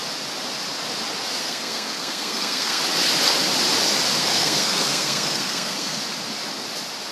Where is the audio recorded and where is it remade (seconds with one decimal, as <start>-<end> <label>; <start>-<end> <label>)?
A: 0.0-1.4 recorded; 1.4-2.8 remade; 2.8-4.2 recorded; 4.2-6.0 remade; 6.0-7.1 recorded